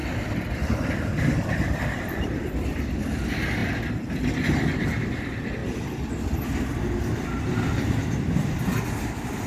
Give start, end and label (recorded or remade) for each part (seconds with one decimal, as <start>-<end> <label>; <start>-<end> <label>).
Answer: 0.0-2.4 remade; 2.4-3.6 recorded; 3.6-4.4 remade; 4.4-9.5 recorded